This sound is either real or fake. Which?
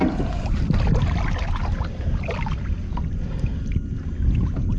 real